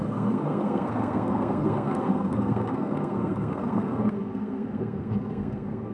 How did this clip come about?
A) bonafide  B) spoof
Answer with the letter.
B